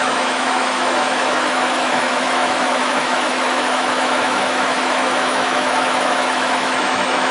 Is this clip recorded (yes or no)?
no